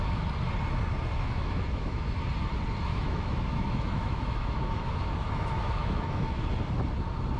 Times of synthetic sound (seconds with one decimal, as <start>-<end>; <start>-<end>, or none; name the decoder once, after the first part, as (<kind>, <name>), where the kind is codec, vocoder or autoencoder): 1.1-2.1 (autoencoder, DAC-VAE); 2.9-6.4